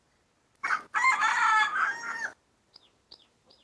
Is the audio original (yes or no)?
yes